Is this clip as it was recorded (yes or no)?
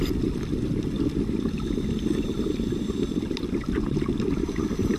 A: no